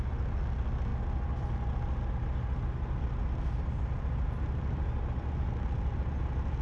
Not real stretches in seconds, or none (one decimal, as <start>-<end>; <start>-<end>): none